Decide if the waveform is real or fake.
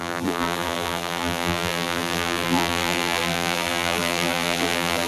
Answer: fake